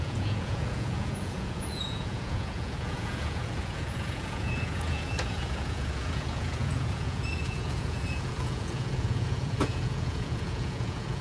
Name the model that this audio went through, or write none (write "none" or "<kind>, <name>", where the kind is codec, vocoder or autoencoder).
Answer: vocoder, Vocos